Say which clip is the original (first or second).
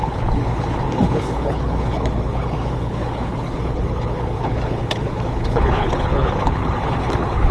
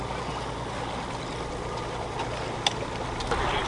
second